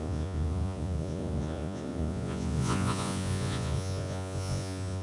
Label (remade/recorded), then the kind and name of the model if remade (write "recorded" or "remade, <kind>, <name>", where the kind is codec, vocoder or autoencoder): remade, vocoder, Vocos